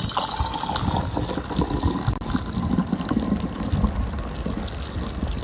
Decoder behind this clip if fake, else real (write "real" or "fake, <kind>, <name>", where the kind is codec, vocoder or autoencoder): real